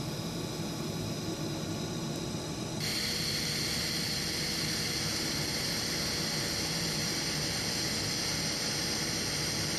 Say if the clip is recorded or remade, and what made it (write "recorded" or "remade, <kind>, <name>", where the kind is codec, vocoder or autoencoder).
recorded